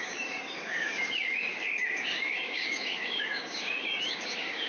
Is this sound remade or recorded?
remade